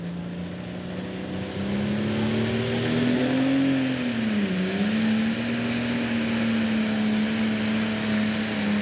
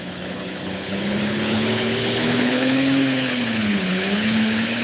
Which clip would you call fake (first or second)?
second